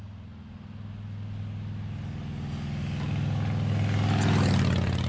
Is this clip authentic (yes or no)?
yes